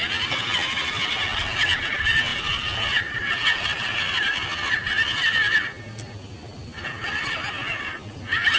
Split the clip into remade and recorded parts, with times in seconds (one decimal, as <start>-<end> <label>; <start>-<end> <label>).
0.0-8.6 recorded